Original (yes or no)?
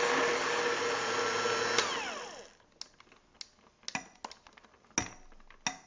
yes